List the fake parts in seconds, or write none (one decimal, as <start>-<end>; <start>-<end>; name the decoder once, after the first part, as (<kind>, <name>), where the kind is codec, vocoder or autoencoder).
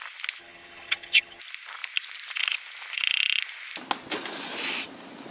0.4-1.4 (vocoder, HiFi-GAN)